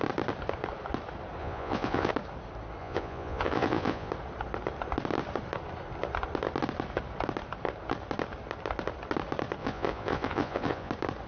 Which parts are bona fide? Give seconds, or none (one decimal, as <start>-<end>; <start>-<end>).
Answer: 0.0-1.4; 2.1-2.8; 4.1-9.6; 10.9-11.3